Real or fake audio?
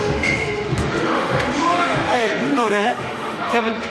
fake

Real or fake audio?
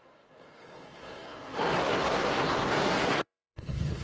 fake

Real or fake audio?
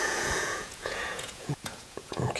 fake